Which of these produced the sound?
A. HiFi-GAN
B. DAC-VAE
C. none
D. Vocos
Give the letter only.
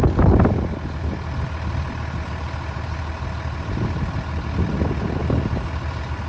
C